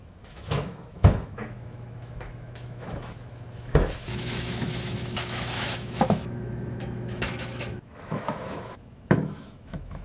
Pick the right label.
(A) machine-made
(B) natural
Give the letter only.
A